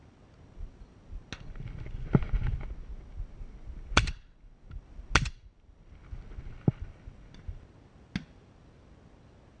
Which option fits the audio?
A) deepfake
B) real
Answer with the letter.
B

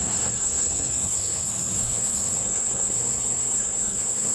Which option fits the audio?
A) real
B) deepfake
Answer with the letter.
B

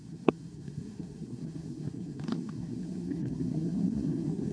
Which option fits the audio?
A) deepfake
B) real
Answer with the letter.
A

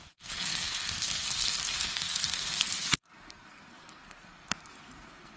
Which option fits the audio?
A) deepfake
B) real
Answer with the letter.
A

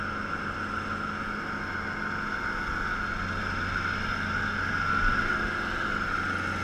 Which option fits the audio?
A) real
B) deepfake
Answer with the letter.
A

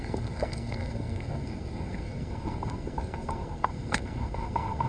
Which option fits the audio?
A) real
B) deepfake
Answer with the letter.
B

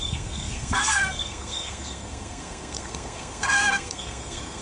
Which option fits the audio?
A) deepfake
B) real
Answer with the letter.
A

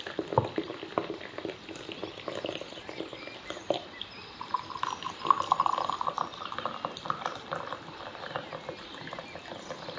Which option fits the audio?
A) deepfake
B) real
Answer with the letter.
B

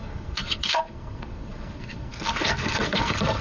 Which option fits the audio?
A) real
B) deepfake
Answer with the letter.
B